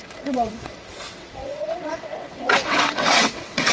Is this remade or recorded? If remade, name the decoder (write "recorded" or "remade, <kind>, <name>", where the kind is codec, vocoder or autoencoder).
remade, vocoder, WaveNeXt